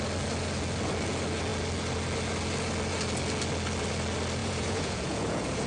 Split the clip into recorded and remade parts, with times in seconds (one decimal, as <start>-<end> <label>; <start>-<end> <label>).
0.0-4.4 recorded; 4.4-5.7 remade